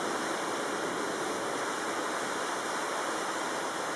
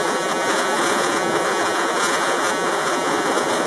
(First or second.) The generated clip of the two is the second